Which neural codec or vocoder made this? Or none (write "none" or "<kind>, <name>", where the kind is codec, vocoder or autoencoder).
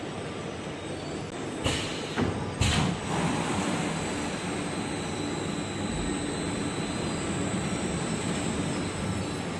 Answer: none